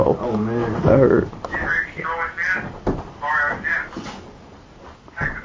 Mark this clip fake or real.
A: real